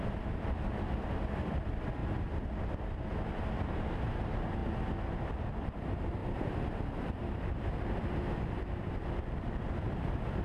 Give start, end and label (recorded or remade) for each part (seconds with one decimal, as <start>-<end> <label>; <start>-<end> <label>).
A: 0.0-2.0 remade; 2.0-3.5 recorded; 3.5-4.6 remade; 4.6-5.3 recorded; 5.3-10.4 remade